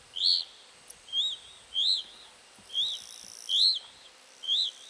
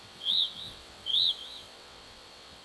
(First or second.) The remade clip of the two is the second